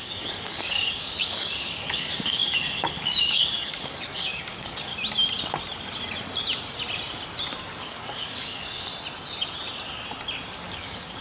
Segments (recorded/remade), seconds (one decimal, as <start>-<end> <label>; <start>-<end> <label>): 0.0-4.9 remade; 4.9-7.8 recorded; 7.8-8.9 remade; 8.9-10.7 recorded; 10.7-11.2 remade